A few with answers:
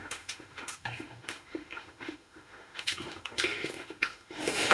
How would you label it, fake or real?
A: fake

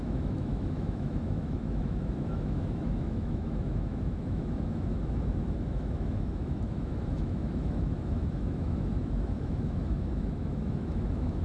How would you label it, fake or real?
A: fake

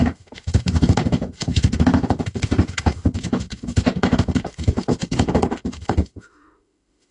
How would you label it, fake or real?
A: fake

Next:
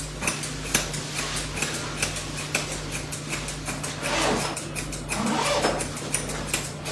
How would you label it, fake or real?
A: real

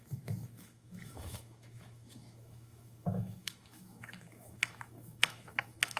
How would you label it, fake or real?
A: fake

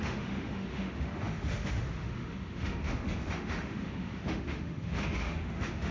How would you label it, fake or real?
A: fake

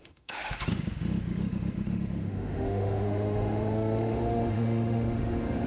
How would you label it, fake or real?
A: fake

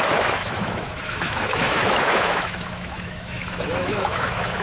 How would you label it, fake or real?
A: fake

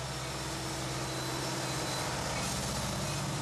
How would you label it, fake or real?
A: real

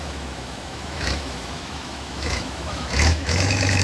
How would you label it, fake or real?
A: fake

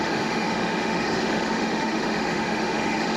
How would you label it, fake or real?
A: fake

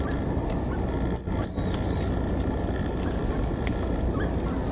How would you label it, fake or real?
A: real